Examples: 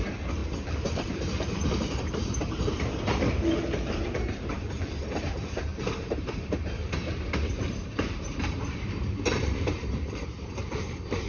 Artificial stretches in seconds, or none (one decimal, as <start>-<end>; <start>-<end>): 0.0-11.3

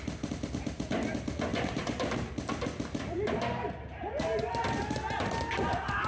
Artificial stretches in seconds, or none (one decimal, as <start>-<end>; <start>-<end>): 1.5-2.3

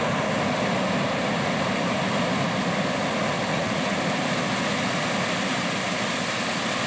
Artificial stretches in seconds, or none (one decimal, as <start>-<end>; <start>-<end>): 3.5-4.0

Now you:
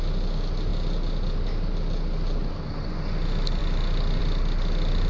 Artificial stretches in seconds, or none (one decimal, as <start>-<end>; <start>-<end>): none

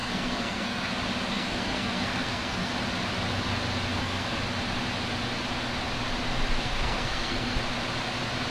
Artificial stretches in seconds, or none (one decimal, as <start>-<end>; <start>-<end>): 0.0-0.9; 1.3-2.7; 3.9-4.4; 6.6-7.6